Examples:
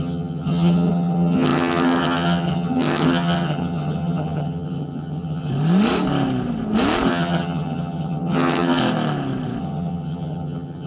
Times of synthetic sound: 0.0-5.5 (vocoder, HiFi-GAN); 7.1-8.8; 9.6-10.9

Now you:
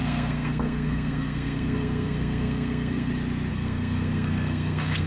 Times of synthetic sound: 0.0-3.1 (codec, SNAC); 3.5-5.1

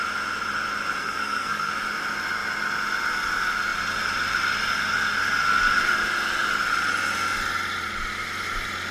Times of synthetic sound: 1.0-1.7 (codec, SNAC)

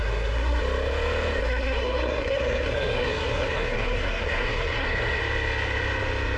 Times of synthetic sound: 0.0-0.6 (codec, SNAC); 1.4-5.2

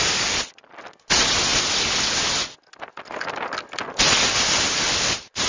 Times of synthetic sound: none

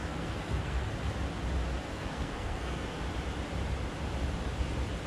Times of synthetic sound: 0.0-0.9 (codec, SNAC); 1.9-3.0